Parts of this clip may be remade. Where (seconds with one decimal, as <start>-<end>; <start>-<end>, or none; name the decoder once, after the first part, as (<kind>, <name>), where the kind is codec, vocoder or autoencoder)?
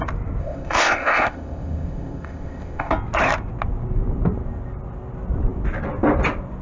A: 0.4-2.9 (codec, ZipCodec)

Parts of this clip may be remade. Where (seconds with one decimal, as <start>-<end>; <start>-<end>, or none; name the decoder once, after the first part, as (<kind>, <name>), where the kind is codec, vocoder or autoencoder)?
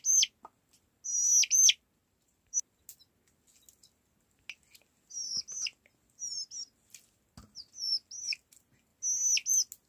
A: 2.0-2.6 (vocoder, BigVGAN v2)